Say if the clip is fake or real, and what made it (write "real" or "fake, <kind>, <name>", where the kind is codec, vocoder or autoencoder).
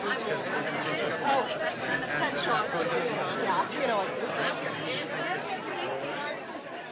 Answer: real